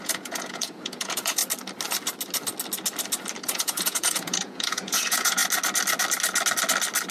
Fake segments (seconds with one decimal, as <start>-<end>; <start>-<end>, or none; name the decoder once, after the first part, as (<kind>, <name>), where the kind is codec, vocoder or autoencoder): 0.0-1.4 (vocoder, Vocos); 3.4-5.4